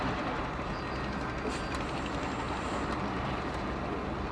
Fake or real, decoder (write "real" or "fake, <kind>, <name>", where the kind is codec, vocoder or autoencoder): real